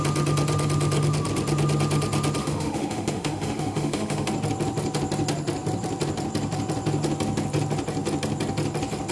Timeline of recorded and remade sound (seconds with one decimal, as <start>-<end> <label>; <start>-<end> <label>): 0.0-2.4 recorded; 2.4-4.3 remade; 4.3-9.1 recorded